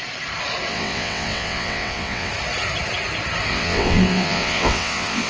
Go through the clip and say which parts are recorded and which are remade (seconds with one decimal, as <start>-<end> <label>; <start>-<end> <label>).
0.0-0.7 recorded; 0.7-2.3 remade; 2.3-3.5 recorded; 3.5-5.3 remade

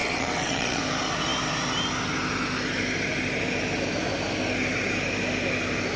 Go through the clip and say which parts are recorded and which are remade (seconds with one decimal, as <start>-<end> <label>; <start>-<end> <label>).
0.0-0.8 remade; 0.8-6.0 recorded

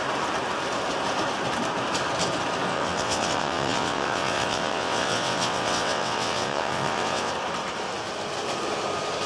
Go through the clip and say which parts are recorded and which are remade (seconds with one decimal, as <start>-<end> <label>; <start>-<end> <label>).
0.0-2.7 recorded; 2.7-7.3 remade; 7.3-9.3 recorded

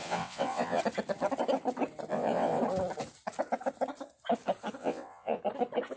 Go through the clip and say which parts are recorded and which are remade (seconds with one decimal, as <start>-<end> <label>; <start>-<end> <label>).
0.0-0.8 remade; 0.8-2.1 recorded; 2.1-2.6 remade; 2.6-4.8 recorded; 4.8-5.4 remade; 5.4-6.0 recorded